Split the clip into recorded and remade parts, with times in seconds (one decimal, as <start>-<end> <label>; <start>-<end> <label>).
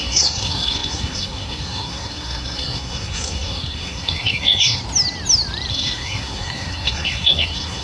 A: 0.0-4.8 remade; 4.8-5.7 recorded; 5.7-7.8 remade